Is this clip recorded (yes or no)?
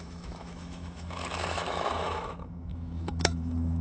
no